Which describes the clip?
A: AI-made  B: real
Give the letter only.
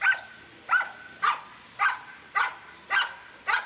B